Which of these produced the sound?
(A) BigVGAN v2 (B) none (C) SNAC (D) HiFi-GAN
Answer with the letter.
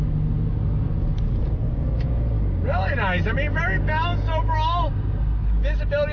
B